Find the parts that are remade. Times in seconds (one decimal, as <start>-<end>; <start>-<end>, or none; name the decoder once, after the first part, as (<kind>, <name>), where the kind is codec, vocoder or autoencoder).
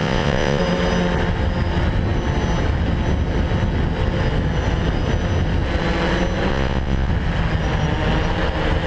0.0-0.6 (vocoder, Vocos); 6.5-7.1